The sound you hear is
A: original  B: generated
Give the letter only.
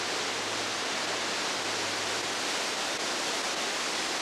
A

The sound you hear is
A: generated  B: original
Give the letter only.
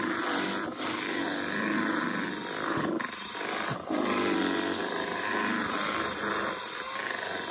A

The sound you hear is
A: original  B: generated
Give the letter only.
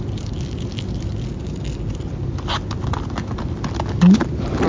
A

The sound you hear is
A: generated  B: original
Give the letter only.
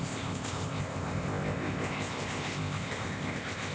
A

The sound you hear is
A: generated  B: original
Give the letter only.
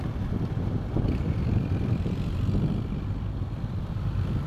A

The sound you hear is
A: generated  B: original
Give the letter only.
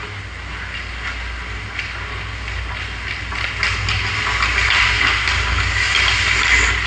B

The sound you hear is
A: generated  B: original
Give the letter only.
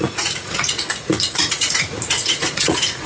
A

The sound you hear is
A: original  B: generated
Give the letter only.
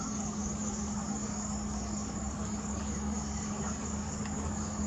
B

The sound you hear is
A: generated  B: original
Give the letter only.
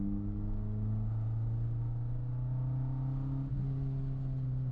B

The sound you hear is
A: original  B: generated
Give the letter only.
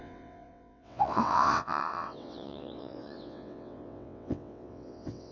B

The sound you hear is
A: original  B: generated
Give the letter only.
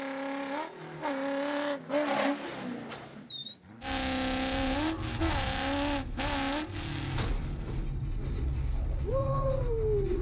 A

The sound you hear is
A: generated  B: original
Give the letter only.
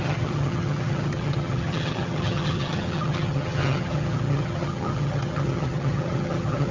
A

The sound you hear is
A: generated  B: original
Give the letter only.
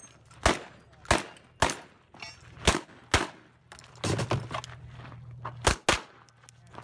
B